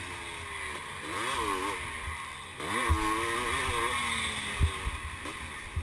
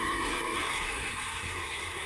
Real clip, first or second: first